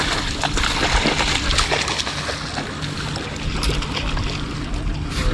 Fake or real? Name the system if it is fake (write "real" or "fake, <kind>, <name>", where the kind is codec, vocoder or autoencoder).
real